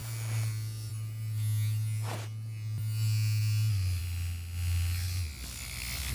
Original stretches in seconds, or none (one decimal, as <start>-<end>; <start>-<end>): 0.0-6.1